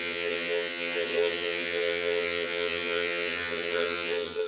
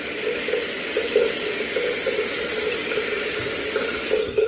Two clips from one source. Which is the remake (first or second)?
first